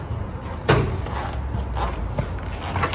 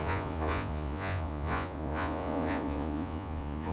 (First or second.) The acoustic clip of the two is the first